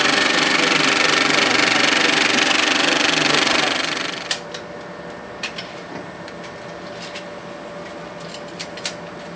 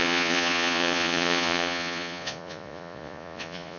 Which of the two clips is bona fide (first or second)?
first